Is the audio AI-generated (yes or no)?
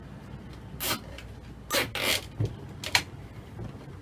no